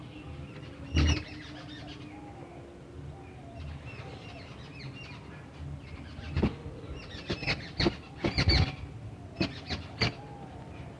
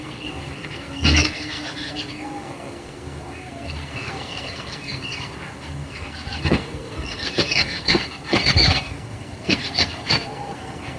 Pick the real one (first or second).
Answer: first